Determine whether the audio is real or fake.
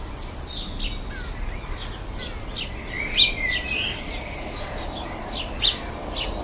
real